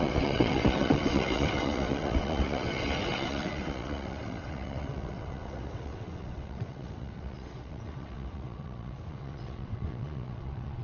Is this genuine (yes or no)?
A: no